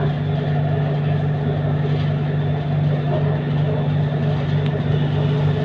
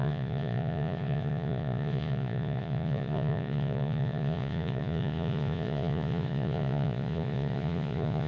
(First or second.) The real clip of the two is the first